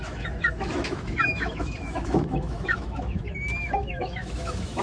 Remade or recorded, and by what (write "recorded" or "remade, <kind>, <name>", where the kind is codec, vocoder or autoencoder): remade, autoencoder, DAC-VAE